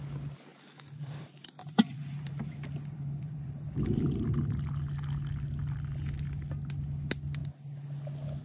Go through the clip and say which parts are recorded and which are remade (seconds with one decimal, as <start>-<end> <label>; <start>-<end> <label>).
0.0-0.5 recorded; 0.5-4.1 remade; 4.1-8.4 recorded